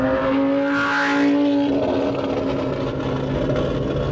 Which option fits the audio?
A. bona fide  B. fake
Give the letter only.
A